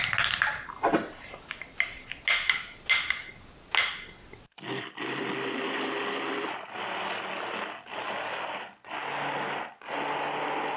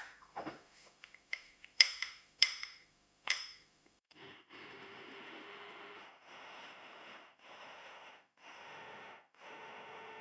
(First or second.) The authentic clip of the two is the first